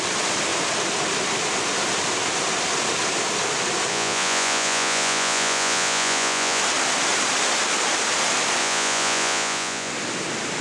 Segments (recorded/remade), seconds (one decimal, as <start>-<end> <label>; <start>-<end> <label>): 0.0-3.9 recorded; 3.9-6.6 remade; 6.6-8.6 recorded; 8.6-9.9 remade; 9.9-10.6 recorded